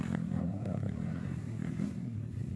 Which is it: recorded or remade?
remade